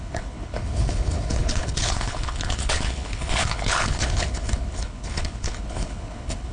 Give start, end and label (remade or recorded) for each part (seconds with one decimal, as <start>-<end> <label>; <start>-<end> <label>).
0.0-6.5 remade